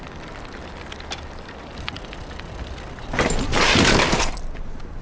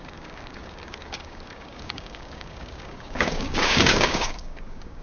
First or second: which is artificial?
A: second